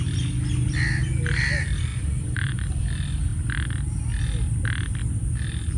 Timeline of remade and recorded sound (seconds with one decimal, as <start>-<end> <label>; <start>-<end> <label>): 0.0-1.9 recorded; 1.9-2.8 remade; 2.8-5.8 recorded